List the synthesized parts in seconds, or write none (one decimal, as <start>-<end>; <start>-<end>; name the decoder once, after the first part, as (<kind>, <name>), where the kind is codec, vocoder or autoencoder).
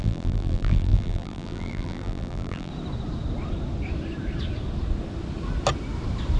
0.0-2.7 (vocoder, BigVGAN v2)